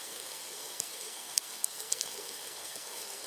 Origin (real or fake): fake